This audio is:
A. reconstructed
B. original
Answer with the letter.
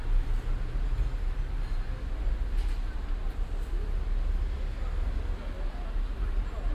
B